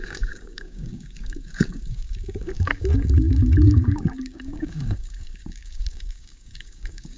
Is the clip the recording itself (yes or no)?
no